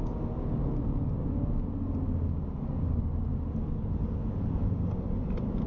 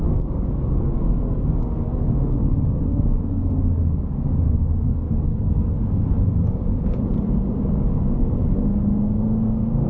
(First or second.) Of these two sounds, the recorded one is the first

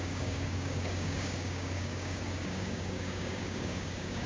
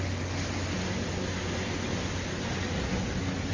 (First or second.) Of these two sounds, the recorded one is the second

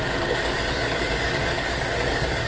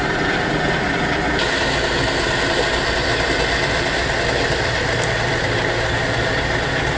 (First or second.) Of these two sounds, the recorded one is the second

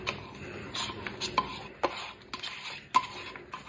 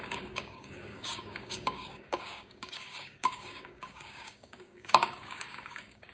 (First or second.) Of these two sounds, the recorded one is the first